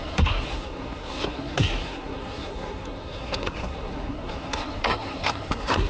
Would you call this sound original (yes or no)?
no